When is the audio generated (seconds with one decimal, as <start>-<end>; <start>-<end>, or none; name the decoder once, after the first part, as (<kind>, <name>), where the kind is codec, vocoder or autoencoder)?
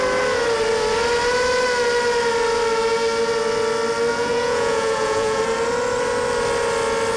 4.1-5.4 (vocoder, Vocos)